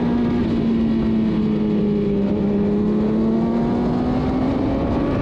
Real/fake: real